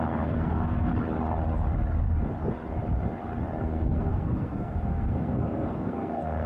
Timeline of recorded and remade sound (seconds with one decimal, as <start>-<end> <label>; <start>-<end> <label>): 0.0-0.9 remade; 0.9-3.6 recorded; 3.6-6.5 remade